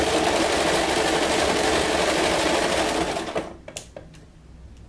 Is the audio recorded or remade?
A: recorded